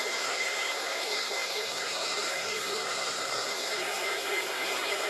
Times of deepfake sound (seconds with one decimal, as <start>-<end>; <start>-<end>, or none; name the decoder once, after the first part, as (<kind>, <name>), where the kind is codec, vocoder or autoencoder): 0.0-5.1 (codec, SNAC)